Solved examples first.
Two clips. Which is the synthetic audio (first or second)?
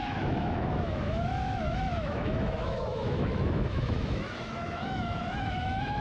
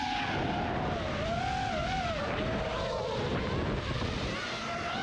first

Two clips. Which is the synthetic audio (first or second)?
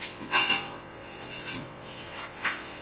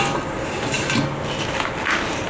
first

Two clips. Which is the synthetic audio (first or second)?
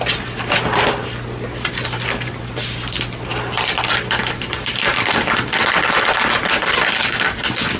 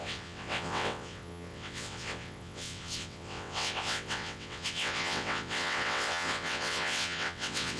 second